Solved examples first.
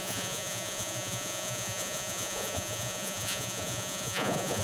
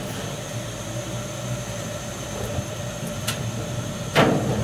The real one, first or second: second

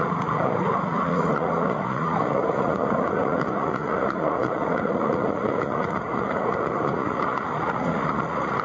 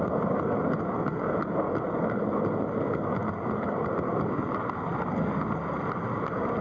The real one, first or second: second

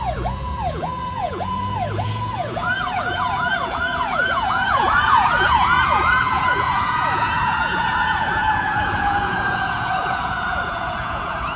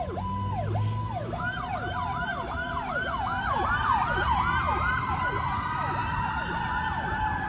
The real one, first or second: second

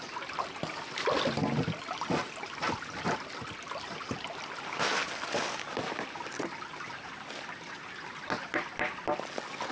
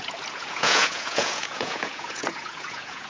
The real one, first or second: first